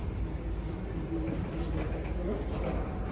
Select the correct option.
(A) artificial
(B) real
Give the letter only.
B